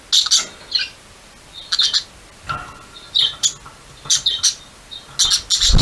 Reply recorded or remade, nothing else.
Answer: recorded